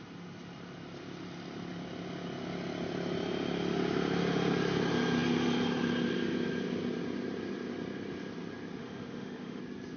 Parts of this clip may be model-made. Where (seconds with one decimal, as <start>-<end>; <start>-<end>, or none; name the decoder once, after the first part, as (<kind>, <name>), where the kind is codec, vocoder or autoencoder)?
8.8-9.6 (autoencoder, DAC-VAE)

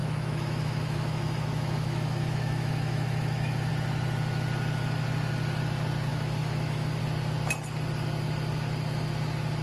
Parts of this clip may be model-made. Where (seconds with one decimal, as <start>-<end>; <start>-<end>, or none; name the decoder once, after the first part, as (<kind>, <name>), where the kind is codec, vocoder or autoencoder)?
0.0-3.7 (autoencoder, DAC-VAE); 6.1-7.0

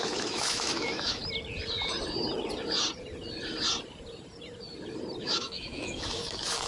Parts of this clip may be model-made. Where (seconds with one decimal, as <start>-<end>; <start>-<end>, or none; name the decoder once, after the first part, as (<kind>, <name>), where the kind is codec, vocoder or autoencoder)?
0.0-1.2 (autoencoder, DAC-VAE); 5.2-6.7

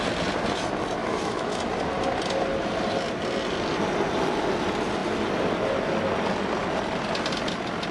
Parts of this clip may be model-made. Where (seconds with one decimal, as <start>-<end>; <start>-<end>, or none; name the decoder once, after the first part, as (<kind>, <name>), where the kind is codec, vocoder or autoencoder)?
1.0-1.6 (autoencoder, DAC-VAE)

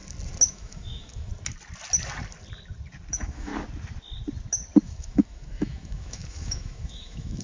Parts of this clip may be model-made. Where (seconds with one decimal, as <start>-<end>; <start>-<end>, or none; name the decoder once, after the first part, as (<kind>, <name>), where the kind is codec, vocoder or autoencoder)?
0.5-1.3 (autoencoder, DAC-VAE); 3.1-3.5; 4.8-7.4

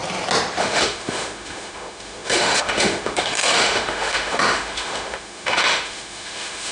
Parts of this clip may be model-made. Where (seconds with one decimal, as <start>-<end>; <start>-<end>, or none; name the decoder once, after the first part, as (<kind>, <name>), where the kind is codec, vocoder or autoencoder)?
0.6-6.7 (autoencoder, DAC-VAE)